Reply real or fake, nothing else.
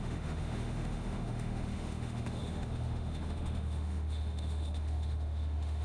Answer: fake